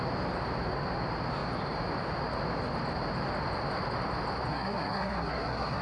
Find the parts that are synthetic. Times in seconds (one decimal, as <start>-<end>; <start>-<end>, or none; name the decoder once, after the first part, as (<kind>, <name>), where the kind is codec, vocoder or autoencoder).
4.5-5.8 (codec, SNAC)